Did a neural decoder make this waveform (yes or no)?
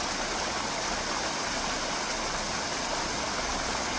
no